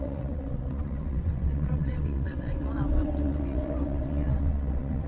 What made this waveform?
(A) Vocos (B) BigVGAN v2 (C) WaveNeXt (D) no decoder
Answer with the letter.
C